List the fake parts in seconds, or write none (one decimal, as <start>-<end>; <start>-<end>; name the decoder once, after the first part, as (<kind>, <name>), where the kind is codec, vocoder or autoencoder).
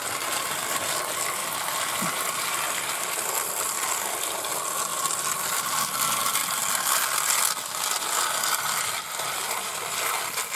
none